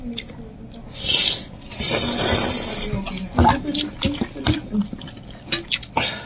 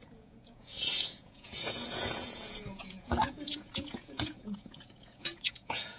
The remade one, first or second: second